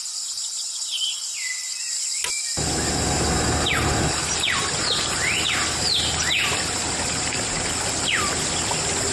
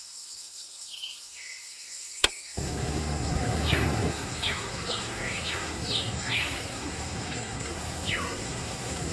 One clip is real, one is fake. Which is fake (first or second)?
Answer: second